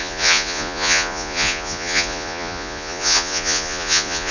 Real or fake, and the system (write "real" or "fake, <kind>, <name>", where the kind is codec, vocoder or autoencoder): fake, vocoder, Vocos